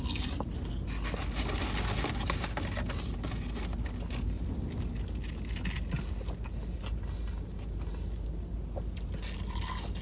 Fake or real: real